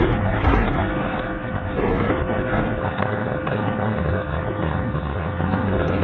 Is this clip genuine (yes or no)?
no